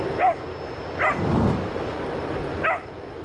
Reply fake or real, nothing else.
real